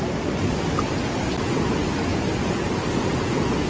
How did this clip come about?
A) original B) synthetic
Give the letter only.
A